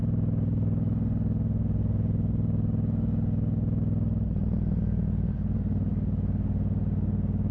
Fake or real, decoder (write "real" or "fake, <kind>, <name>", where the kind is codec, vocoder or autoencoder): real